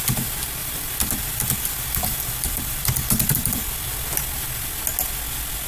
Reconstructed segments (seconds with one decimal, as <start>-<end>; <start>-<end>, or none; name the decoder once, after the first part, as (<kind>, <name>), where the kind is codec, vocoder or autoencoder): 0.6-3.7 (vocoder, BigVGAN v2)